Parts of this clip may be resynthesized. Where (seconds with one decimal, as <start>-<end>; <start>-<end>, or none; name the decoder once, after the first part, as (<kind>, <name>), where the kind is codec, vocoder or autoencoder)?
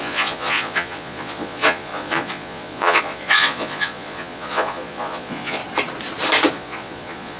0.0-5.6 (vocoder, Vocos); 6.5-7.4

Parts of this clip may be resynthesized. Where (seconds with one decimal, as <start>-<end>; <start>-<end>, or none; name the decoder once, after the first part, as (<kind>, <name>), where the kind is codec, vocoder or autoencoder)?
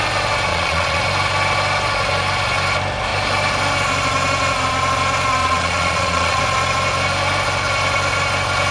0.5-1.0 (vocoder, Vocos); 5.4-6.4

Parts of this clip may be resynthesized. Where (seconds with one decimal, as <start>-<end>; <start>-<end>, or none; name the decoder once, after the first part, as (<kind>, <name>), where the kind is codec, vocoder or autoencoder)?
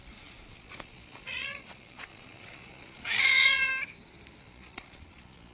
0.0-3.7 (vocoder, Vocos); 4.4-5.5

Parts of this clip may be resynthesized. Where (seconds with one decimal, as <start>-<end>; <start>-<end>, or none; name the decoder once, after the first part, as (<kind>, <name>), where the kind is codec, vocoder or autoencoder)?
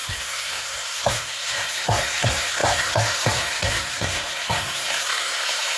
0.0-5.8 (codec, SNAC)